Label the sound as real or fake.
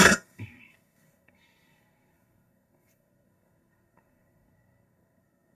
fake